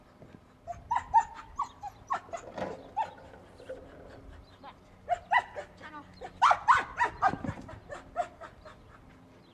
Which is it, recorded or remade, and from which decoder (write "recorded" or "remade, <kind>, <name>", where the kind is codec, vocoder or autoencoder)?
recorded